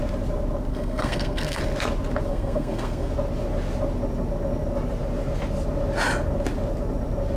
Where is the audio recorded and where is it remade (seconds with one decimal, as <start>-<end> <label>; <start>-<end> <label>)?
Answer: 0.0-0.7 recorded; 0.7-1.6 remade; 1.6-2.3 recorded; 2.3-3.1 remade; 3.1-7.4 recorded